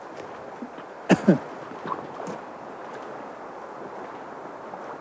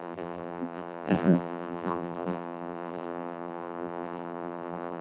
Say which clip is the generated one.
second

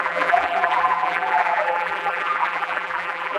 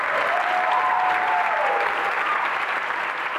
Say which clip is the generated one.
first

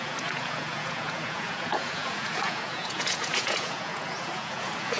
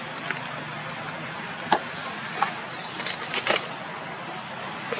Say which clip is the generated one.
first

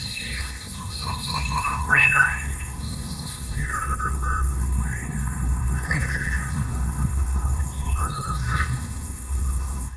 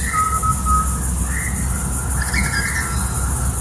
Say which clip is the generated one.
first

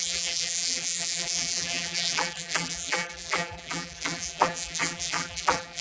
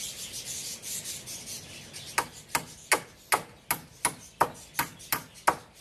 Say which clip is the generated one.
first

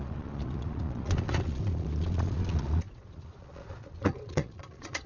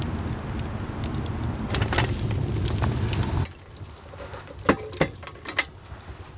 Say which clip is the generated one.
first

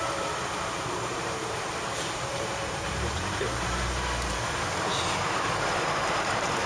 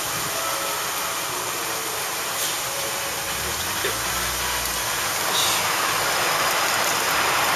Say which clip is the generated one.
first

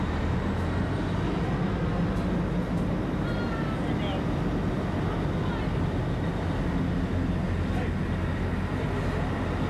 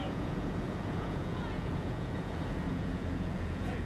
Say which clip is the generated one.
second